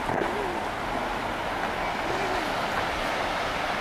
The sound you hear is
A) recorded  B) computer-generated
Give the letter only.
A